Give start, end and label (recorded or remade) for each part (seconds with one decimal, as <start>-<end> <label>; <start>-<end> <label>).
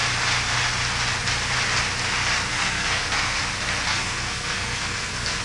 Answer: 0.0-2.5 recorded; 2.5-3.4 remade; 3.4-3.9 recorded; 3.9-5.4 remade